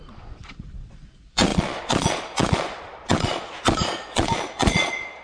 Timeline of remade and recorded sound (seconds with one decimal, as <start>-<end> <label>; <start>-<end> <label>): 0.0-5.2 remade

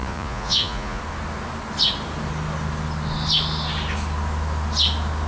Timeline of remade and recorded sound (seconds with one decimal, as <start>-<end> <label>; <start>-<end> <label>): 0.0-1.0 remade; 1.0-5.3 recorded

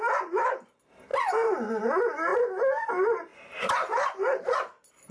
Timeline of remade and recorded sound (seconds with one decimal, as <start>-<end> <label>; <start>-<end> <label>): 0.0-5.1 recorded

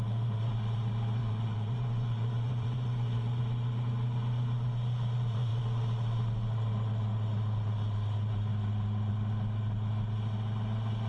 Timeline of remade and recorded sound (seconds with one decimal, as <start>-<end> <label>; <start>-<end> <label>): 0.0-1.2 recorded; 1.2-3.4 remade; 3.4-11.1 recorded

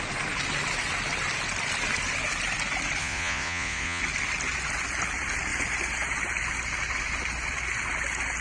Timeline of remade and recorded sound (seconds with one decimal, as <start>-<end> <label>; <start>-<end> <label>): 0.0-3.0 recorded; 3.0-4.0 remade; 4.0-8.4 recorded

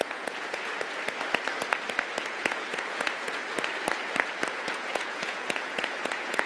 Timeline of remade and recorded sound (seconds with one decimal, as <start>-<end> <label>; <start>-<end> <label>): 0.0-0.7 remade; 0.7-2.3 recorded; 2.3-3.4 remade; 3.4-4.5 recorded; 4.5-6.5 remade